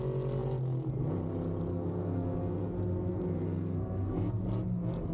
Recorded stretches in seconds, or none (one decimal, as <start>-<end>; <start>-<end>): 0.0-1.7; 2.7-3.1; 4.4-5.1